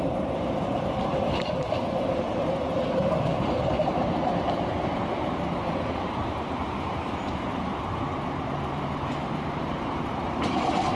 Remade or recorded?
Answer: remade